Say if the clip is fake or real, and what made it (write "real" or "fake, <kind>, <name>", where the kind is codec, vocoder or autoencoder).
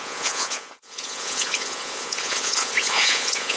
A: fake, vocoder, Vocos